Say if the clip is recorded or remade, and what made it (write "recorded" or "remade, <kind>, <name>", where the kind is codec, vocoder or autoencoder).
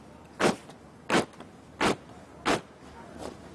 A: recorded